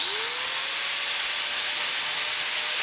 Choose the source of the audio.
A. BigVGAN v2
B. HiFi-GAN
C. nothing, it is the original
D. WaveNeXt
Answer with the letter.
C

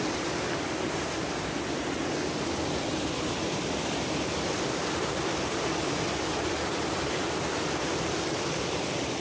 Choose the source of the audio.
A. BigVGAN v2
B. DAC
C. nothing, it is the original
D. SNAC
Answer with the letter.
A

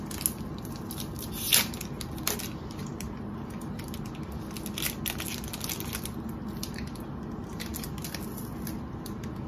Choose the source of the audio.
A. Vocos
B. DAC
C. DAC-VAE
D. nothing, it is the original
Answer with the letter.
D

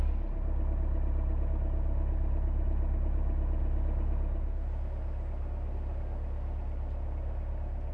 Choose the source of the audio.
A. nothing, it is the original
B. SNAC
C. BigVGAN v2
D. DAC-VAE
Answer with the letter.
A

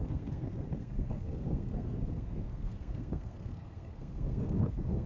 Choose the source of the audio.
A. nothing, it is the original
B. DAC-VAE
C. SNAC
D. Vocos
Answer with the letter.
C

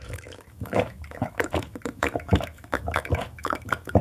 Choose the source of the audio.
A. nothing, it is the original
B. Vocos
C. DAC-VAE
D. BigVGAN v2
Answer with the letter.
C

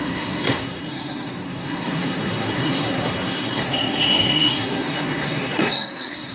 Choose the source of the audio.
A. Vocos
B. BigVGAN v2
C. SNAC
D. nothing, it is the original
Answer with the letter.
C